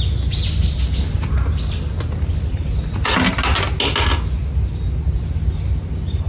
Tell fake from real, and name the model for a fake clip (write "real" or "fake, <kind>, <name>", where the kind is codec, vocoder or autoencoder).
real